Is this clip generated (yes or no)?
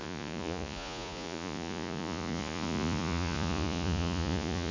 yes